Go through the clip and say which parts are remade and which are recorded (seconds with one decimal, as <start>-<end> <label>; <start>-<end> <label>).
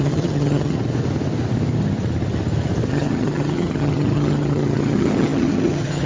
0.0-0.8 remade; 0.8-2.9 recorded; 2.9-6.1 remade